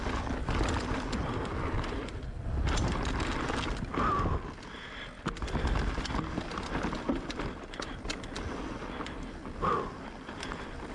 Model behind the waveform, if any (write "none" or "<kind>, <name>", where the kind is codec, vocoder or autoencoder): none